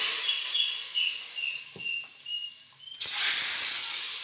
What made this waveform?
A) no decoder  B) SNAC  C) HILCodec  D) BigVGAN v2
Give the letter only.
A